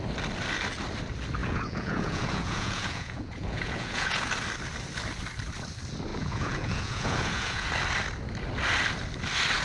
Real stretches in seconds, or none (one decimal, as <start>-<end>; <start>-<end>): 0.0-1.4; 4.3-6.1; 7.7-9.6